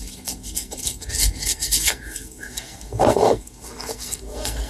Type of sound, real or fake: fake